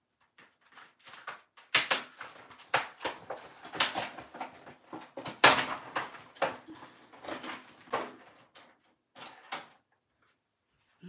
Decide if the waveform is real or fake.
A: real